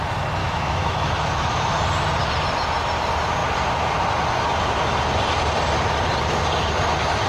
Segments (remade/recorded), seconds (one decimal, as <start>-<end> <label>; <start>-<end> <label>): 0.0-0.4 recorded; 0.4-1.6 remade; 1.6-7.3 recorded

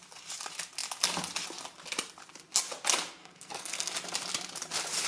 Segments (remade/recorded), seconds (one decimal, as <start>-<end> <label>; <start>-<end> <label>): 0.0-3.2 recorded; 3.2-3.9 remade; 3.9-5.1 recorded

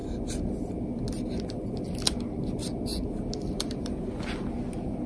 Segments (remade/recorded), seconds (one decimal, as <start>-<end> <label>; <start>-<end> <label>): 0.0-5.1 recorded

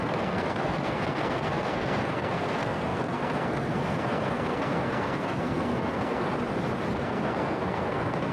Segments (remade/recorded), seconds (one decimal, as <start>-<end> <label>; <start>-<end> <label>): 0.0-6.3 remade; 6.3-6.9 recorded; 6.9-8.3 remade

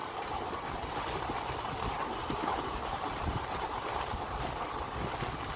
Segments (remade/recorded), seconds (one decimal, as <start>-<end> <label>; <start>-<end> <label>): 0.0-0.7 remade; 0.7-2.2 recorded; 2.2-4.6 remade; 4.6-5.6 recorded

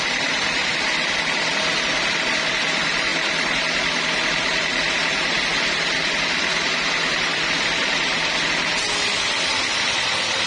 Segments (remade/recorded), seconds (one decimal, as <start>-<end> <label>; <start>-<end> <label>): 0.0-10.5 recorded